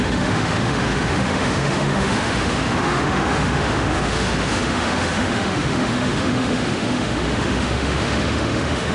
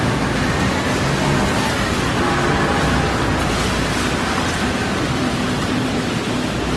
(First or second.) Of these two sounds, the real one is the second